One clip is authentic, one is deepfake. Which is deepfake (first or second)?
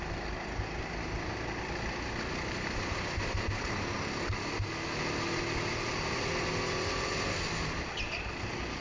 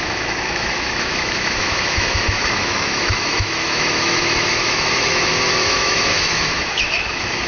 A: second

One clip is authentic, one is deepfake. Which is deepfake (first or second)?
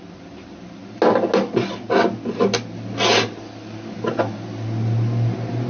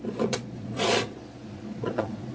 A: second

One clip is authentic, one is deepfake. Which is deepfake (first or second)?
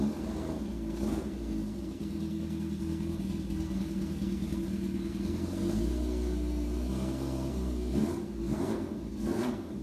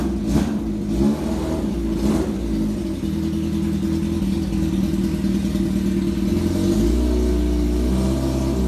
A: first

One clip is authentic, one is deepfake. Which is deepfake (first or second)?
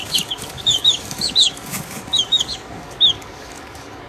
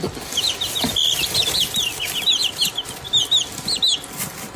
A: first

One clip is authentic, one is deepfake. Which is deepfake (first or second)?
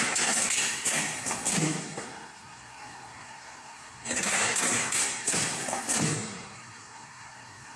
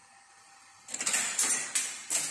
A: first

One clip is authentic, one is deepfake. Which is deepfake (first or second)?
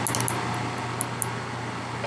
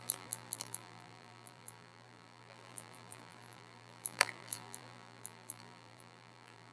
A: second